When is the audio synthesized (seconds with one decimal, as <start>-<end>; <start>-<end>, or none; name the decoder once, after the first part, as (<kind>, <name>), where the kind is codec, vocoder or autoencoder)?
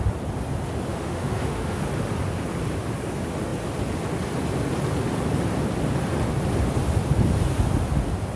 0.9-1.8 (autoencoder, DAC-VAE)